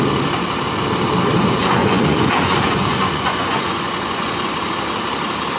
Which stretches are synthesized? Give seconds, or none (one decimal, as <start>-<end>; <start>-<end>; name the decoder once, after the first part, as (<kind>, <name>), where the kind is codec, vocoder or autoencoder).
1.3-4.7 (vocoder, Vocos)